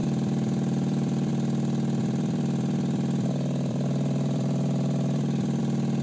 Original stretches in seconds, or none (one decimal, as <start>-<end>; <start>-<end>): 1.3-2.0; 5.6-6.0